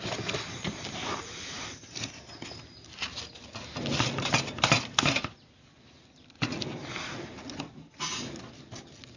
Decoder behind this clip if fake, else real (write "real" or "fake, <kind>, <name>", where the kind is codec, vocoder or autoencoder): real